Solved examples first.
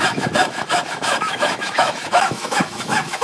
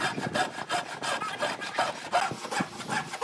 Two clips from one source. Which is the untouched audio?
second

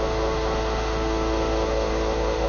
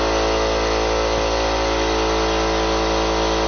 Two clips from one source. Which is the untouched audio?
second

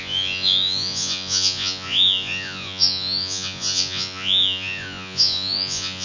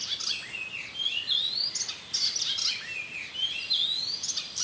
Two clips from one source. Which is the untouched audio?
second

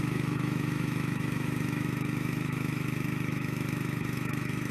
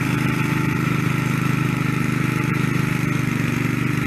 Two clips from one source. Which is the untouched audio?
second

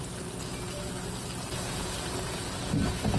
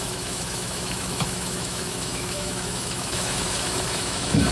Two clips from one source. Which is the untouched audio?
first